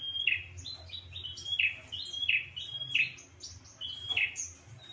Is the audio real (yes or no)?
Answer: yes